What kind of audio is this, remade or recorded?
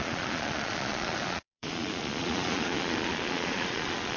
remade